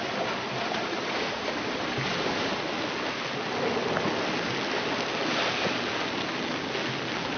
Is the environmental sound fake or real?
real